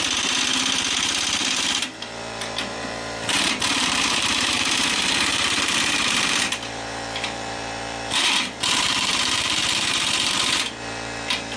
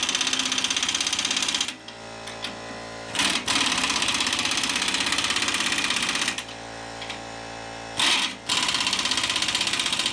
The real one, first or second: second